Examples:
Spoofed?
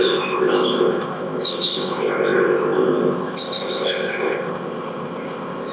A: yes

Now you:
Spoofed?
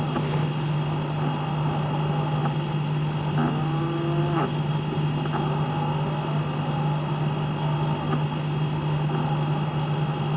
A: no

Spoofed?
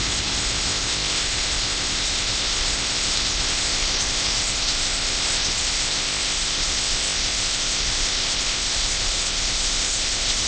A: yes